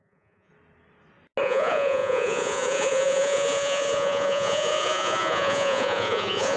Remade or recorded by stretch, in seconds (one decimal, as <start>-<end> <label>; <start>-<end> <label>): 0.0-0.5 remade; 0.5-1.4 recorded; 1.4-6.6 remade